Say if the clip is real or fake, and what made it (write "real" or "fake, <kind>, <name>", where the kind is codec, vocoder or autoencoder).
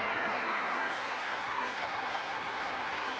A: fake, codec, SNAC